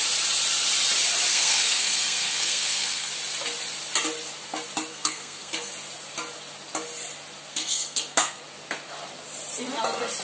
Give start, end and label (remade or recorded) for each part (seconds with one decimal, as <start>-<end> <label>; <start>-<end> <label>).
0.0-1.3 recorded; 1.3-3.1 remade; 3.1-4.9 recorded; 4.9-5.7 remade; 5.7-7.5 recorded; 7.5-8.4 remade; 8.4-10.2 recorded